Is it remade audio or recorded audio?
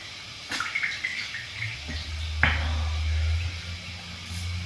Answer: recorded